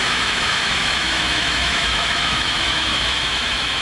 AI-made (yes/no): yes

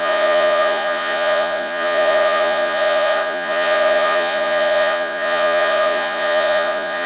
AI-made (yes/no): yes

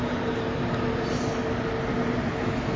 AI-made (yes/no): no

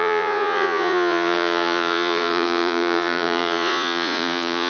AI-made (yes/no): yes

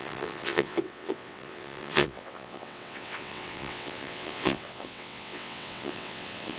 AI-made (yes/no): yes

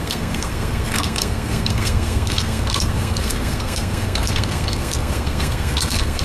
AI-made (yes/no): yes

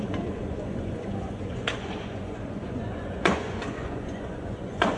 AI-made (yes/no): yes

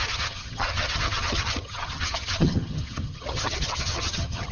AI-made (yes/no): yes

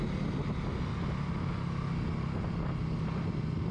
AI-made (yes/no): no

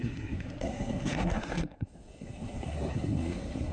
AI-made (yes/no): yes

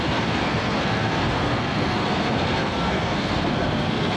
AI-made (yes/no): yes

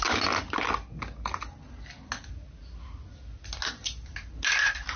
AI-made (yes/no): no